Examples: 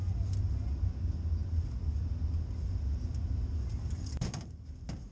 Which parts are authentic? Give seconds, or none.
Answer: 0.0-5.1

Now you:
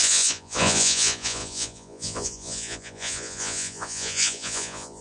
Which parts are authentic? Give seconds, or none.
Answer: none